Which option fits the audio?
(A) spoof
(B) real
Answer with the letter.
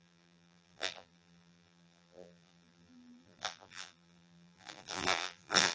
A